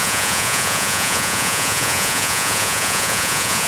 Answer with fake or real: fake